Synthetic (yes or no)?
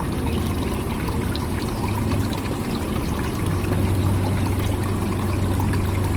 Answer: no